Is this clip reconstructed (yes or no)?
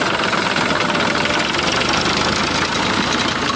no